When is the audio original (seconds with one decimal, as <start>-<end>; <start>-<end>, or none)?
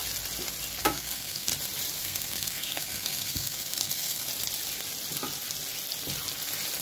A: 0.0-0.8; 1.5-2.0; 4.3-6.8